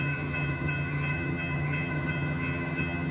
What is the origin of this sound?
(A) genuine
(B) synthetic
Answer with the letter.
B